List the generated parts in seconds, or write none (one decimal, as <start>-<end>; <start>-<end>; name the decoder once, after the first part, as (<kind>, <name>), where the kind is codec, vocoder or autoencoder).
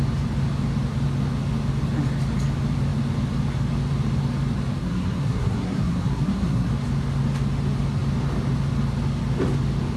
4.8-6.7 (codec, SNAC)